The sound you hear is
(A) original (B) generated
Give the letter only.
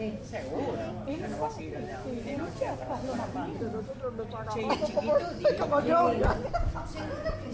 A